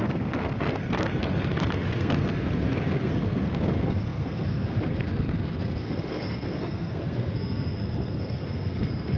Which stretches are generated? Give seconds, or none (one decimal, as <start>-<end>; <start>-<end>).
0.0-9.2